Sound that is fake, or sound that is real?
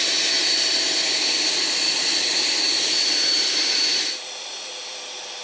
real